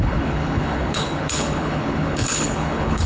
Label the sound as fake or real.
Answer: fake